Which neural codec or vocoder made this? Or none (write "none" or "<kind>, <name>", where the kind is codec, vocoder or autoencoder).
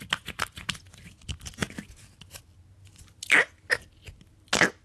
none